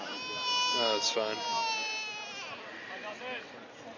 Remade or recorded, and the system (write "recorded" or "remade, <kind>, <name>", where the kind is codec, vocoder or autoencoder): recorded